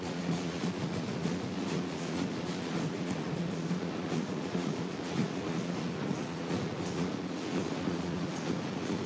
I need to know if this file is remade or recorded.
remade